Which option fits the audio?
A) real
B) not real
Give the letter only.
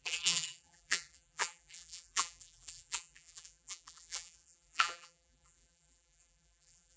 B